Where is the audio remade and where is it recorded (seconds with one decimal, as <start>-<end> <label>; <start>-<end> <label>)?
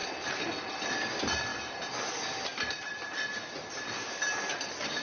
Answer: 0.0-5.0 recorded